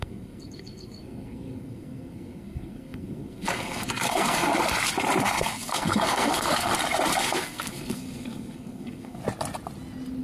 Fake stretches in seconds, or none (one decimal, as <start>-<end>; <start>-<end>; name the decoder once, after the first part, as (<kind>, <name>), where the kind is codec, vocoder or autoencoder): 0.0-4.5 (codec, SNAC); 5.2-6.7; 7.2-9.2

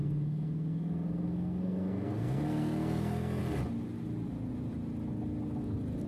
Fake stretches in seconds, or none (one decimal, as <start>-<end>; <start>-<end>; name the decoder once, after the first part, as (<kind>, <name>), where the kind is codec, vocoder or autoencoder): 0.0-3.4 (codec, SNAC)

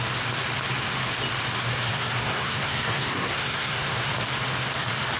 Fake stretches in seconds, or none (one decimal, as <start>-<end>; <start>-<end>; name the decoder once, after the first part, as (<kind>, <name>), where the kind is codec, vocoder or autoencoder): 1.9-4.1 (codec, SNAC)

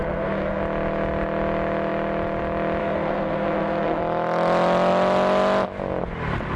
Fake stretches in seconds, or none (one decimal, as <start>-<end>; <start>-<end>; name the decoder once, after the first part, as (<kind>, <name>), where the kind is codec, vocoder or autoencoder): 0.0-0.6 (codec, SNAC); 2.8-4.0

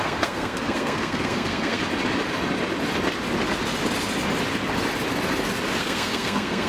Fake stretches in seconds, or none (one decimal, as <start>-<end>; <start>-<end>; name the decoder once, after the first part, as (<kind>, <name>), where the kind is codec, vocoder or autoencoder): 0.0-1.8 (codec, SNAC); 5.8-6.7

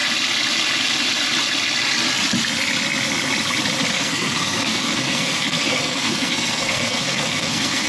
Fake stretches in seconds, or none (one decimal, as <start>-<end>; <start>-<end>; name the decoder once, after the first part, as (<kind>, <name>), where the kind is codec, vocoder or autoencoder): 3.9-7.9 (codec, SNAC)

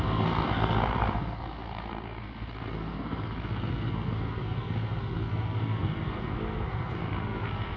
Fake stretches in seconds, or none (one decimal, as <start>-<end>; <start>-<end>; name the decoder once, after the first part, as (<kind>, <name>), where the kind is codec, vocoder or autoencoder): 0.0-7.8 (codec, SNAC)